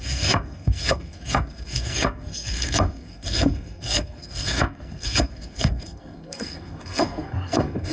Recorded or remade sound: remade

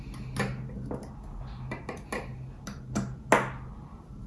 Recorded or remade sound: recorded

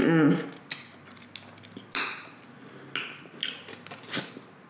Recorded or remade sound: recorded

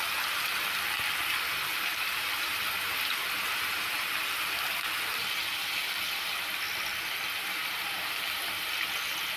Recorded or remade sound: recorded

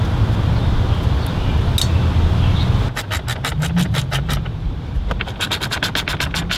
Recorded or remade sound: recorded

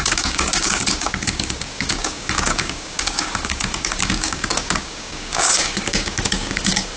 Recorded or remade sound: remade